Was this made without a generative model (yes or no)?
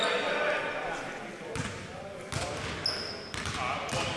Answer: yes